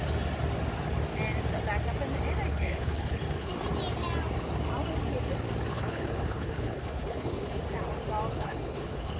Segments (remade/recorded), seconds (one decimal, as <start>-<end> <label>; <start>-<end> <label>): 0.0-2.5 recorded; 2.5-3.5 remade; 3.5-5.7 recorded; 5.7-7.6 remade; 7.6-8.3 recorded; 8.3-9.2 remade

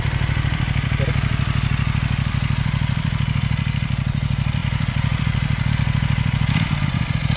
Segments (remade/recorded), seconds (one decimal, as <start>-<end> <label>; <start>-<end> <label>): 0.0-7.4 remade

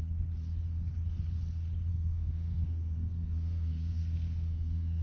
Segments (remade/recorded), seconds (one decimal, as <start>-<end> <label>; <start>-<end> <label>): 0.0-1.9 recorded; 1.9-5.0 remade

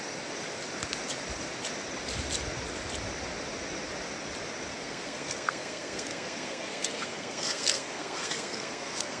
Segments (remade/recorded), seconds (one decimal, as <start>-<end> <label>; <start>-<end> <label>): 0.0-4.7 recorded; 4.7-9.2 remade